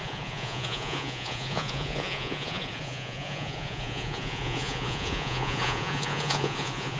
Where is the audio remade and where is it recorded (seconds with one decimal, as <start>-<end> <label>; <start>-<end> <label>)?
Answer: 0.0-7.0 remade